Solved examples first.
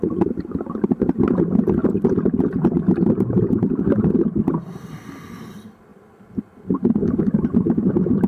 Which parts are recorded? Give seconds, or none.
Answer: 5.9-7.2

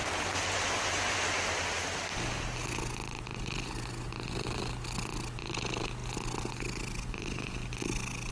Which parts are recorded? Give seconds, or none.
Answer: 0.0-8.3

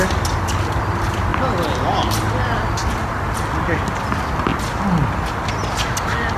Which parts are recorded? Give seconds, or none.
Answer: 0.0-6.4

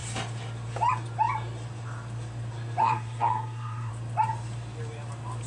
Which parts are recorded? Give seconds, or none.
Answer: 0.0-2.8; 3.9-5.5